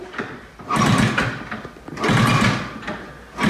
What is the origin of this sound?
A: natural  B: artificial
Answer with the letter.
A